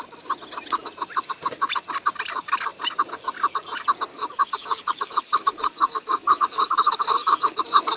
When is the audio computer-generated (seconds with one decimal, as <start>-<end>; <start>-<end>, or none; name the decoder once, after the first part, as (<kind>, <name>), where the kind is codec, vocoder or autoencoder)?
4.1-7.6 (codec, DAC)